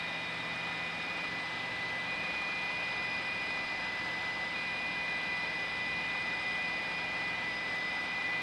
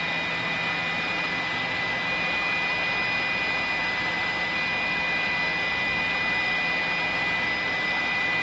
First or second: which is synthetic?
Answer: first